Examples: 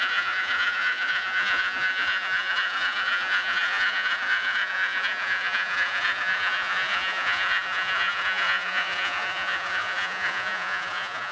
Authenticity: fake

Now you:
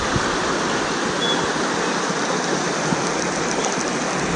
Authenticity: real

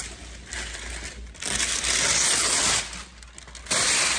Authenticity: real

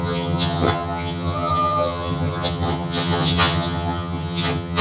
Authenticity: fake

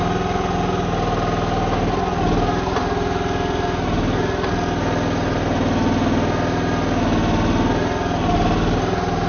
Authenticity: real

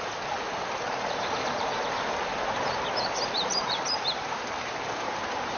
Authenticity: fake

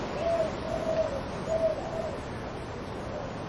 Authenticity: real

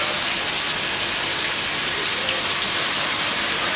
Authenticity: real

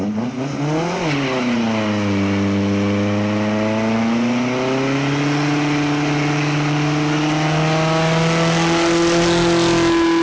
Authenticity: real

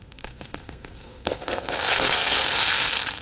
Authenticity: fake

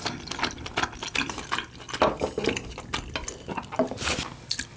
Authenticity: real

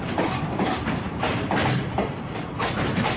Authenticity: fake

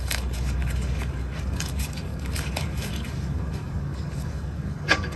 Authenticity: fake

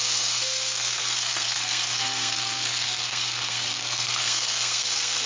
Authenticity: fake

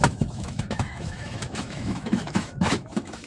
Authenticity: fake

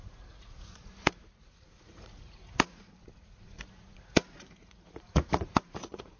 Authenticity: fake